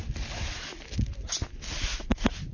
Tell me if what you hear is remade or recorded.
recorded